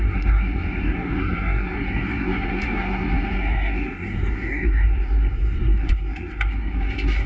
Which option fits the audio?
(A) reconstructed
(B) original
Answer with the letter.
A